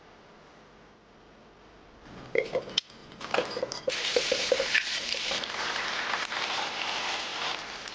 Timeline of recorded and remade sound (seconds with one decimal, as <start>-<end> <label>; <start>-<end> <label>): 0.0-3.0 recorded; 3.0-3.6 remade; 3.6-4.1 recorded; 4.1-5.8 remade; 5.8-7.9 recorded